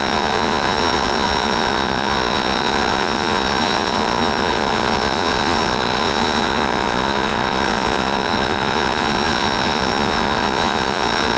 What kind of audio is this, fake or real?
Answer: fake